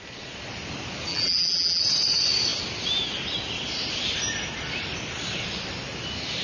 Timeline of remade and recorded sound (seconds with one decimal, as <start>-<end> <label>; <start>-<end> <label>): 0.0-1.1 recorded; 1.1-1.8 remade; 1.8-6.4 recorded